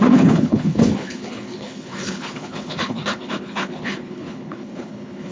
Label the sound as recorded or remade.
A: remade